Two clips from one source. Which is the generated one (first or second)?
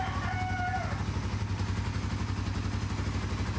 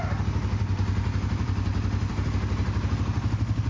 second